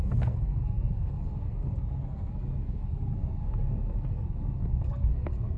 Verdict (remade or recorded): remade